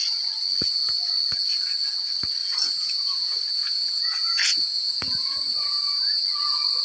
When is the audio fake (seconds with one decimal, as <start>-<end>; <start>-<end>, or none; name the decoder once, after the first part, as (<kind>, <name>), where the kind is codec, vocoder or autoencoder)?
2.4-6.2 (vocoder, Vocos)